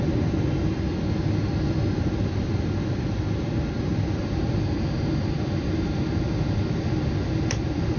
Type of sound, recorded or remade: recorded